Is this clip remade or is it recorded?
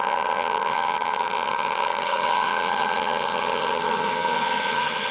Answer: remade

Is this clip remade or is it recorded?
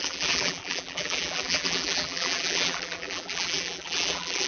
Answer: remade